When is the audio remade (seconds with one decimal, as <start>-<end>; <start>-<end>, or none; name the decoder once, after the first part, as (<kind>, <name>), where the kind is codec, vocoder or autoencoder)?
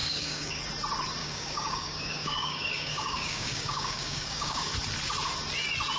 0.0-0.6 (codec, DAC); 1.2-4.7